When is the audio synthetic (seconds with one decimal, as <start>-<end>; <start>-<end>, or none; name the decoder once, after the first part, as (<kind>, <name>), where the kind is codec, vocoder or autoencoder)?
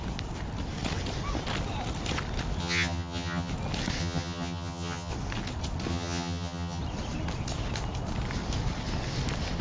2.6-3.5 (vocoder, HiFi-GAN); 4.0-5.1; 5.9-6.8